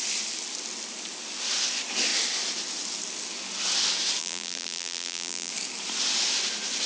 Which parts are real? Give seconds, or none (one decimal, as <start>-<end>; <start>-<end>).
0.0-4.2; 5.5-6.9